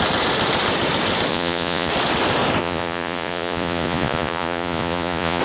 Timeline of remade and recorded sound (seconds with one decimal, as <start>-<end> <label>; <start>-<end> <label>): 0.0-1.3 recorded; 1.3-1.9 remade; 1.9-2.6 recorded; 2.6-5.4 remade